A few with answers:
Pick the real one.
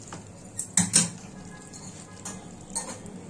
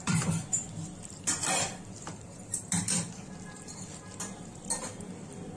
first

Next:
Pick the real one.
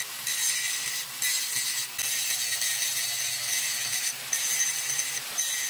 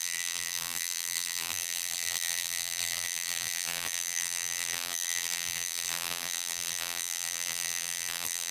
first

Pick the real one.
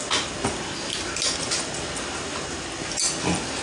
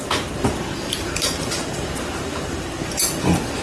first